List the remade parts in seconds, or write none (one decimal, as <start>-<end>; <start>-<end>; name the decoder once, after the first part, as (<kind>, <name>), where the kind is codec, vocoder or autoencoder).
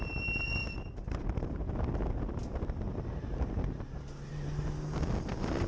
none